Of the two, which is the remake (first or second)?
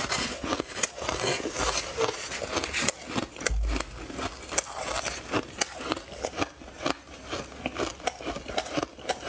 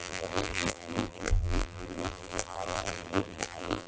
second